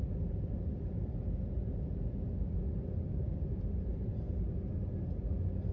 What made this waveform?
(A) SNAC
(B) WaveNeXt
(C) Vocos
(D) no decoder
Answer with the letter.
D